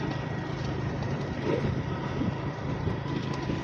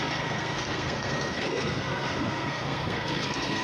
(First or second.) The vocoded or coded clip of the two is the second